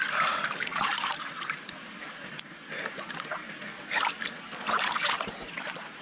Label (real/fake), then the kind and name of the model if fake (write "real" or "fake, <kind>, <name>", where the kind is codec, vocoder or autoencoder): real